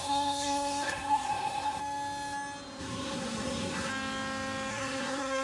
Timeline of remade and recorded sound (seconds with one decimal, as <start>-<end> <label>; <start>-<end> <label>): 0.0-1.8 remade; 1.8-2.8 recorded; 2.8-3.9 remade; 3.9-4.7 recorded; 4.7-5.4 remade